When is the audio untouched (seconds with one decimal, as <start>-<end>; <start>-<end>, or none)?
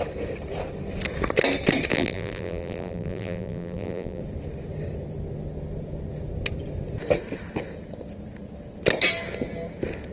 0.0-1.9; 4.2-10.1